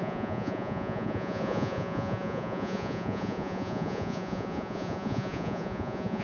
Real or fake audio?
fake